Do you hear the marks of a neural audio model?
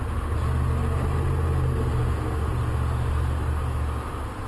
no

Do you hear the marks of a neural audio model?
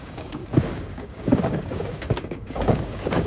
yes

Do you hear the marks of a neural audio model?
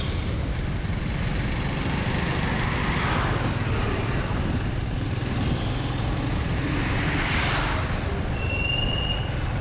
no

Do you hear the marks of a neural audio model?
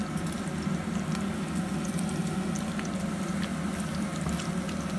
no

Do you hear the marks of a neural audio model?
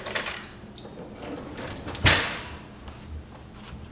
no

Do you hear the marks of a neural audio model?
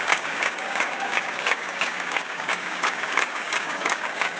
yes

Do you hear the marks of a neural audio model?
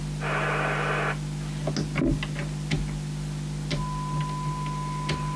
no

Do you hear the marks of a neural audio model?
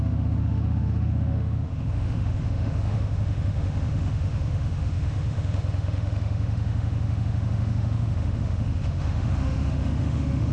yes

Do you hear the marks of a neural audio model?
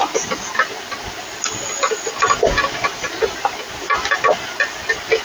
no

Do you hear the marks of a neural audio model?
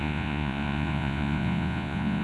yes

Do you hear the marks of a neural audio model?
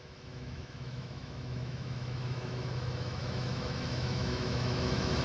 yes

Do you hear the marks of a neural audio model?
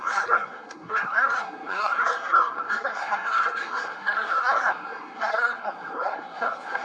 yes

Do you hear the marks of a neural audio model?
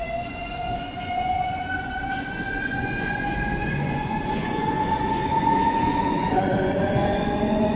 yes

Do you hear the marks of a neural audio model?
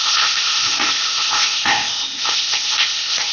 yes